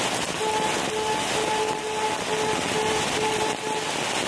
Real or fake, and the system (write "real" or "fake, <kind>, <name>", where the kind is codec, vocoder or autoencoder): real